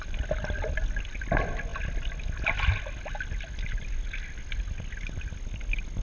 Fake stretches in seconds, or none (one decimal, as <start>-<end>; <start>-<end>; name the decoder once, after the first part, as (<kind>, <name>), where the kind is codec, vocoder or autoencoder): none